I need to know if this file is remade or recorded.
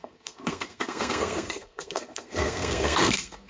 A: remade